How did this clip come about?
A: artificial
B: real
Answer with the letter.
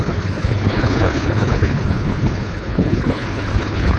A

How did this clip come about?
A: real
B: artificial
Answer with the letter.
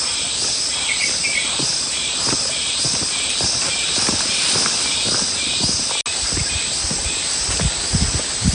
A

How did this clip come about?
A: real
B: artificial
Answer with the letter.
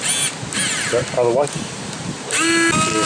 A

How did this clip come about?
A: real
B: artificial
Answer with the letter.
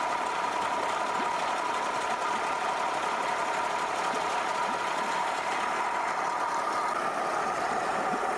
A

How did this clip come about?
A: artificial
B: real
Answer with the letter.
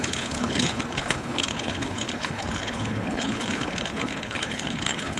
A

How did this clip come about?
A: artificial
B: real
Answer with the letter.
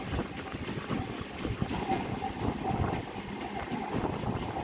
B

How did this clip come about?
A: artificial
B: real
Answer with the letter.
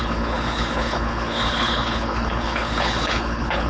A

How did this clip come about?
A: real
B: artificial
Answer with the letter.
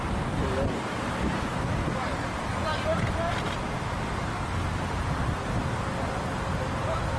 A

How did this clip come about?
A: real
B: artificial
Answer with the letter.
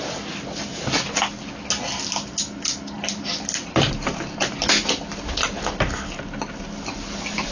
A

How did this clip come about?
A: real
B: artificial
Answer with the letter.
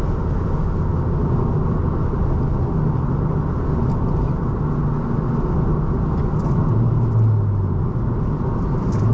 A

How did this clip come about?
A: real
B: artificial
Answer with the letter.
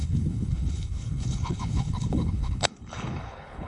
B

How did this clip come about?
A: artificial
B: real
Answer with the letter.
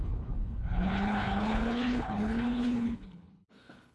A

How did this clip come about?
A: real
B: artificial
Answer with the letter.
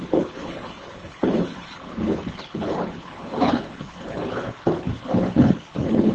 B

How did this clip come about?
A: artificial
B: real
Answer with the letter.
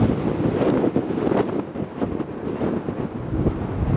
B